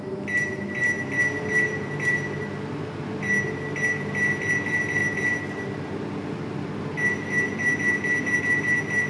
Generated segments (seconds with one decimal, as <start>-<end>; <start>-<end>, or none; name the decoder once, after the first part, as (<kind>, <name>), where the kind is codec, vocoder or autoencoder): none